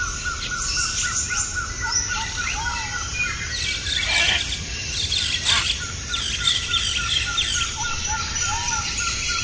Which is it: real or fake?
real